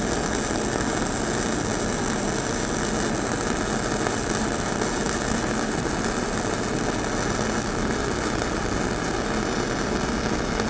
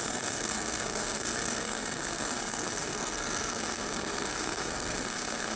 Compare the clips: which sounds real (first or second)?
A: first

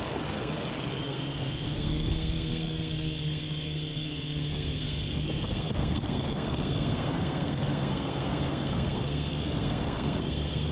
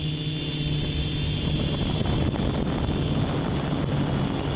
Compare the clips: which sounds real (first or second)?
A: second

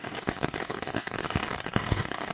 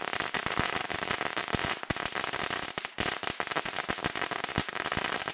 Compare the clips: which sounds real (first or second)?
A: second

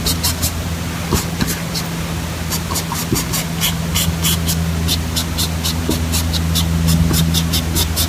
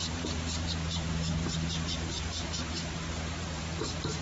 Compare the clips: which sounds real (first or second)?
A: first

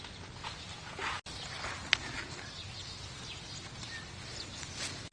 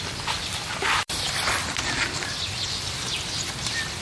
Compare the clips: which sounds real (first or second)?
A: first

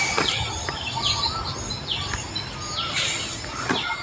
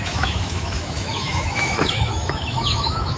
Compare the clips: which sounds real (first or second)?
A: first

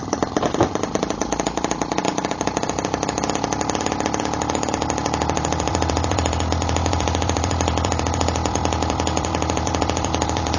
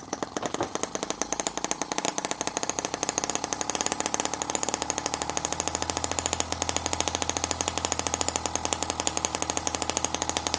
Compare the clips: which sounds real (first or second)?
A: second